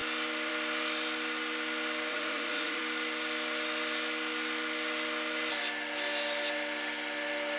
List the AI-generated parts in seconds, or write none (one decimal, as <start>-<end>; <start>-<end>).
2.1-2.8